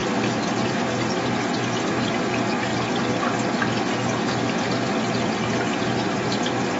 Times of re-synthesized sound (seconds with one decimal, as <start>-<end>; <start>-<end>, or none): none